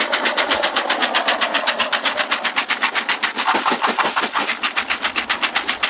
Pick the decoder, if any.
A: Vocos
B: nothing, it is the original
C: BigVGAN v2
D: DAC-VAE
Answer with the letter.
B